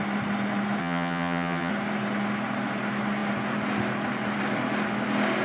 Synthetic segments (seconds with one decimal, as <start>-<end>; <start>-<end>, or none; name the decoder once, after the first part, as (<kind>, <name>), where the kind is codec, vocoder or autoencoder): 0.8-1.7 (vocoder, HiFi-GAN)